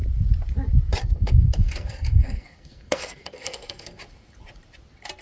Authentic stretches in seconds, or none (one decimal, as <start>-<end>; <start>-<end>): 0.0-1.0; 4.0-5.2